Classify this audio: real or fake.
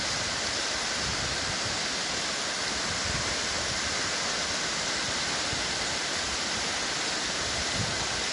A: real